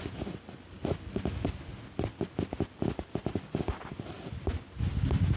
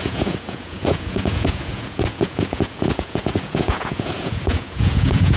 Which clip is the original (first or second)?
first